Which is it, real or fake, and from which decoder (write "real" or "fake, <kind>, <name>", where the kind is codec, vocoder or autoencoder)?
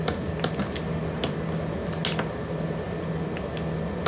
real